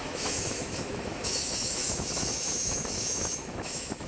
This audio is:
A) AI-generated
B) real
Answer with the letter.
A